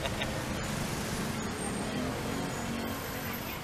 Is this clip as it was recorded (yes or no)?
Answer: yes